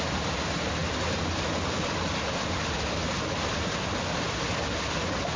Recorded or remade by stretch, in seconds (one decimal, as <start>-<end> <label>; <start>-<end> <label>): 0.0-5.4 recorded